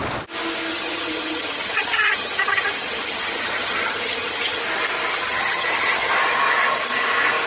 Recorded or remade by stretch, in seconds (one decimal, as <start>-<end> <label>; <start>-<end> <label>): 0.0-0.7 recorded; 0.7-4.6 remade; 4.6-5.1 recorded; 5.1-6.1 remade; 6.1-7.5 recorded